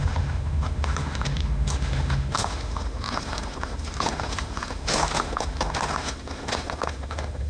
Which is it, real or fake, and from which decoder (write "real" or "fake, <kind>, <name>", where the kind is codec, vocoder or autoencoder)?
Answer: fake, autoencoder, DAC-VAE